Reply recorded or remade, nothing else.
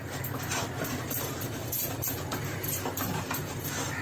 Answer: remade